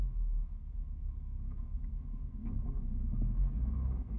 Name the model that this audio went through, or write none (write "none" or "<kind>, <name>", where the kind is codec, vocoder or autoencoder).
codec, SNAC